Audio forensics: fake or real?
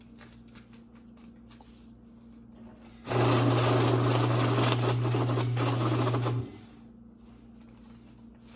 real